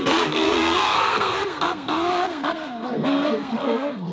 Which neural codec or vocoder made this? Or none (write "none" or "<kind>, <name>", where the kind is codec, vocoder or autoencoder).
codec, SNAC